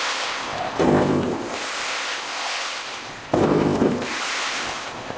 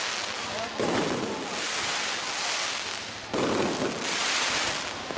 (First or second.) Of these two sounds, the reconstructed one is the first